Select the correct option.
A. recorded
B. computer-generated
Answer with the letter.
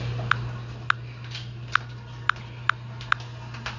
A